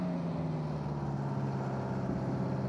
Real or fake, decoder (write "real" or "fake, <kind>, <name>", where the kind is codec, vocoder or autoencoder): real